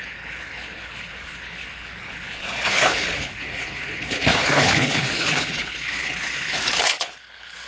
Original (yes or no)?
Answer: no